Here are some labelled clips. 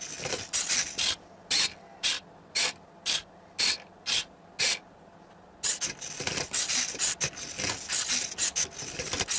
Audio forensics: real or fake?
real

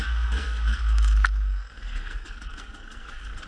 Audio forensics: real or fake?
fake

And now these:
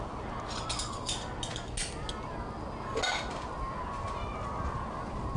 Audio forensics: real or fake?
real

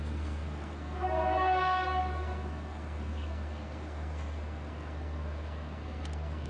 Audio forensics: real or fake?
fake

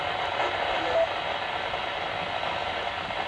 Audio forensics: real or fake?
real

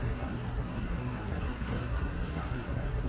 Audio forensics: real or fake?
fake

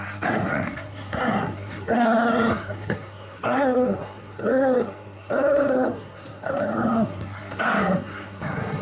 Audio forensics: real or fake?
fake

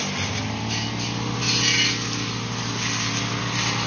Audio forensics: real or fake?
real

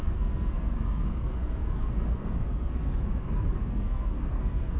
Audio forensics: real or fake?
fake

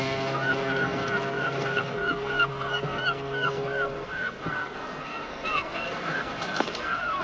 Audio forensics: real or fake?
fake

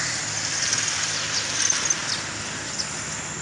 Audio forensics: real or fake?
real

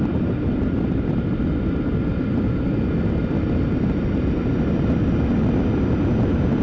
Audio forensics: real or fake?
real